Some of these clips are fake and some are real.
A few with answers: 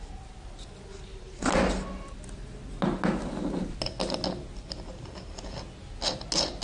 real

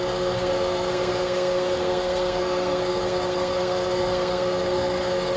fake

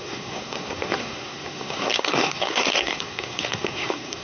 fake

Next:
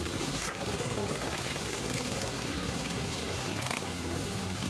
fake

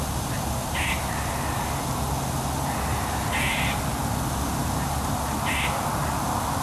real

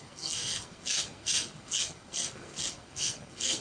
fake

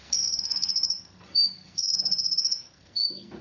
fake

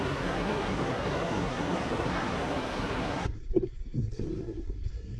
fake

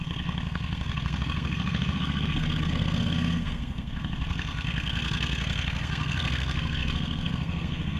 fake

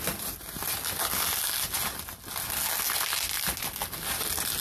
real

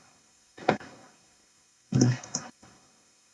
fake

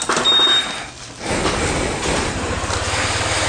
real